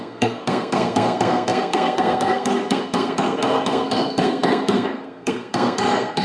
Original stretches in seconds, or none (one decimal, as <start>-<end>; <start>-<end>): none